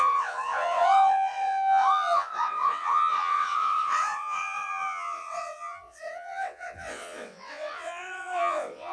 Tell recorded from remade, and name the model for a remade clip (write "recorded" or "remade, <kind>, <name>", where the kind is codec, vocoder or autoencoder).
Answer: remade, vocoder, WaveNeXt